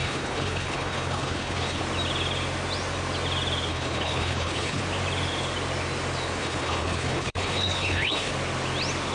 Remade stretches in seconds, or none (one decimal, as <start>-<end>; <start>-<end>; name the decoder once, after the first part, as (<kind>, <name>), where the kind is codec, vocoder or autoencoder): 0.0-1.8 (codec, HILCodec); 3.7-4.8; 6.4-8.3